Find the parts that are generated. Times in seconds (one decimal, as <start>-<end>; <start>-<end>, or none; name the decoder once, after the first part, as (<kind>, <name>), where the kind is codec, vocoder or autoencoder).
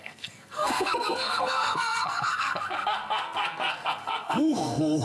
0.0-5.0 (codec, SNAC)